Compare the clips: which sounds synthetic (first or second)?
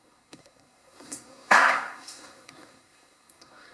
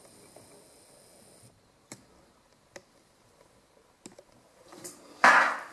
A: first